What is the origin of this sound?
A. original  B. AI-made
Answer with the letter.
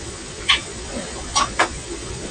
B